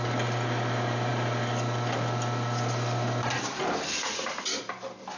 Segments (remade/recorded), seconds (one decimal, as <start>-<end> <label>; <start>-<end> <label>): 0.0-5.2 recorded